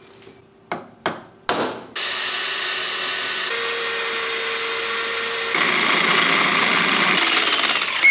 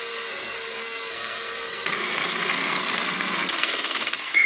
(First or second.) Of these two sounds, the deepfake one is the second